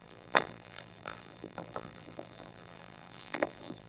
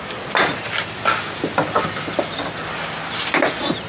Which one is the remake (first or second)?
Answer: first